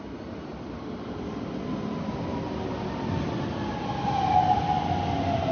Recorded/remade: recorded